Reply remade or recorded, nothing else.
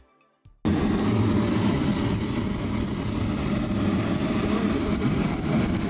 recorded